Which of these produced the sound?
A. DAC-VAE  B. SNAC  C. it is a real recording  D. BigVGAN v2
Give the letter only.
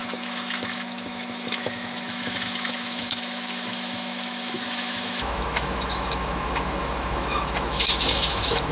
A